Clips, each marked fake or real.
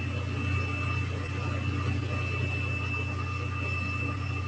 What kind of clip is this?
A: real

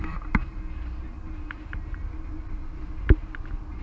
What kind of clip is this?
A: real